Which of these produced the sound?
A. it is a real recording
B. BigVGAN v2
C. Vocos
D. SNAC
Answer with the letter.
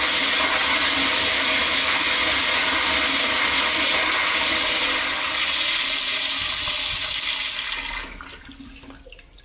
A